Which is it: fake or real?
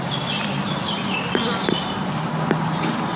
fake